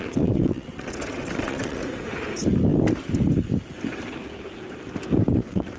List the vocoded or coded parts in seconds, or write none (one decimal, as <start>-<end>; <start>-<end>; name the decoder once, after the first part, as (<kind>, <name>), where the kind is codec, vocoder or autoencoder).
0.0-1.8 (vocoder, WaveNeXt); 5.3-5.8